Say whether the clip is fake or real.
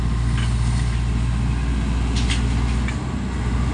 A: real